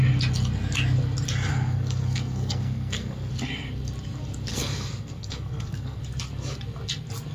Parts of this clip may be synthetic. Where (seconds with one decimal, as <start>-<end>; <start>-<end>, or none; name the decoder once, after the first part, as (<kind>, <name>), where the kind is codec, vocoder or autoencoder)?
1.5-3.3 (codec, SNAC); 4.5-6.0